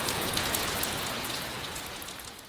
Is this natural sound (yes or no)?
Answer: no